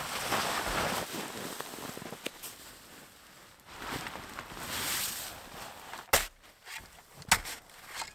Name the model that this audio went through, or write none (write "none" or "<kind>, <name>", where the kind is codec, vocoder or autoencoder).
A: none